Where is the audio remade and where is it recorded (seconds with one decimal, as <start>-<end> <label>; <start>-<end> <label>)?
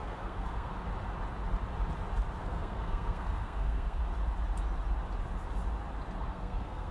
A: 0.0-0.7 remade; 0.7-2.4 recorded; 2.4-4.0 remade; 4.0-6.2 recorded; 6.2-6.9 remade